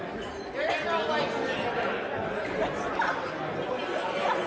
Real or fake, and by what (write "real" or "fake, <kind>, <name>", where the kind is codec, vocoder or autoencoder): real